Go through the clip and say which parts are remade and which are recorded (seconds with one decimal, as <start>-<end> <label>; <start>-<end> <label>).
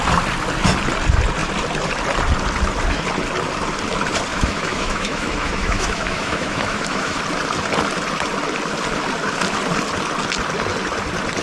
0.0-4.3 recorded; 4.3-7.2 remade; 7.2-11.4 recorded